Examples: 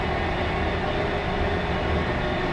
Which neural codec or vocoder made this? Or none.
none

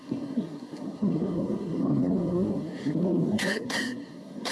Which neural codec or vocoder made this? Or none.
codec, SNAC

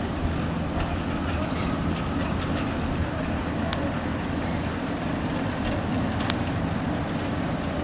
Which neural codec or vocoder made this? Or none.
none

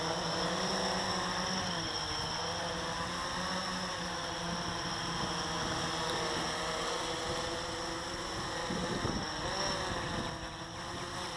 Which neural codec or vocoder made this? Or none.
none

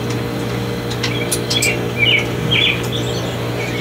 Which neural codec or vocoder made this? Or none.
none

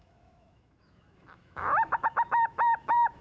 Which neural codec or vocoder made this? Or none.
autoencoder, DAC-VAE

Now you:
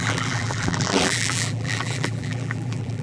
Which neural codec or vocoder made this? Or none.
vocoder, BigVGAN v2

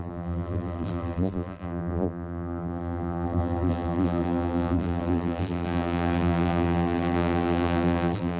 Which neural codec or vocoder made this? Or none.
vocoder, BigVGAN v2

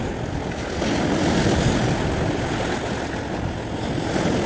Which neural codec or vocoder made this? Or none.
none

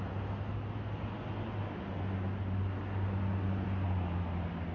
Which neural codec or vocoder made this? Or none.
none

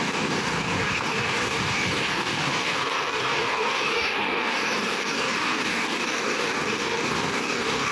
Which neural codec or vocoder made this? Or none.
codec, DAC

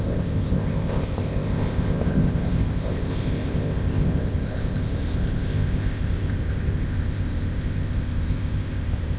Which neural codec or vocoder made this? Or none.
codec, ZipCodec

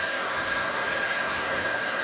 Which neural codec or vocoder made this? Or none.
codec, SNAC